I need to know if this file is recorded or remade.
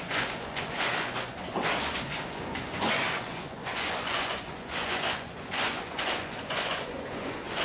remade